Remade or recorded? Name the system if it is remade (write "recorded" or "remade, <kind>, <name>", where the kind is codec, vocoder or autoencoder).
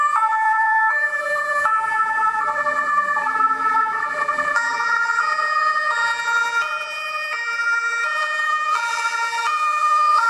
remade, vocoder, BigVGAN v2